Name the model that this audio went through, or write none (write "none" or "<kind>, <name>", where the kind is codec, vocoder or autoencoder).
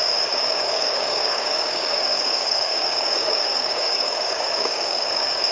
codec, DAC